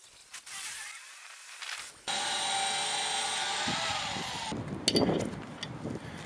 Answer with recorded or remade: recorded